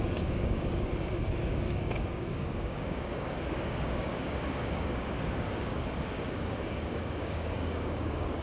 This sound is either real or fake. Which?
fake